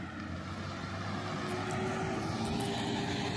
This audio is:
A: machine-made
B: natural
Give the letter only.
B